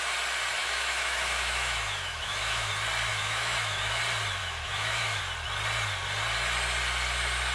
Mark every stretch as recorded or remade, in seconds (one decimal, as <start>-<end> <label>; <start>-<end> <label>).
0.0-0.6 recorded; 0.6-2.7 remade; 2.7-3.1 recorded; 3.1-4.0 remade; 4.0-4.4 recorded; 4.4-5.2 remade; 5.2-7.5 recorded